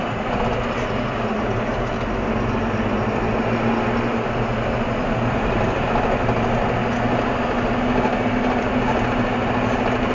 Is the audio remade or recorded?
recorded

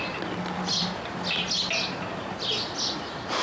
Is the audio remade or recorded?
recorded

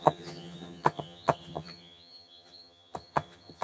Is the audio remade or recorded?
remade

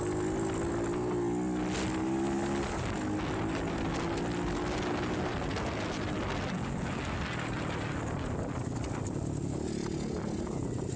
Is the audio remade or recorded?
recorded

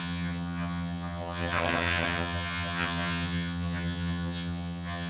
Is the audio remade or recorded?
remade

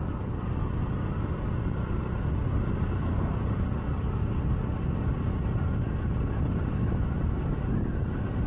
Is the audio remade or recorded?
recorded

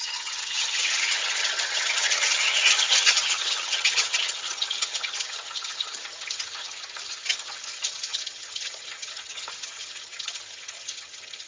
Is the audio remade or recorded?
remade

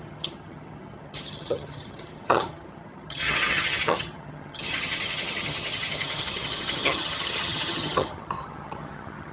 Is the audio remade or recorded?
remade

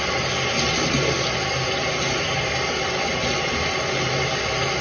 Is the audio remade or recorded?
recorded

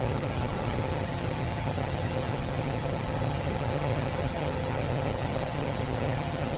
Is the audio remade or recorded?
remade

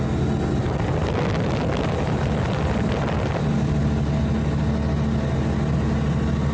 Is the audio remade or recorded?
recorded